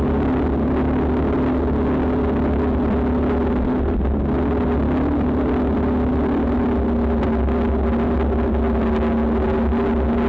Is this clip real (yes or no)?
yes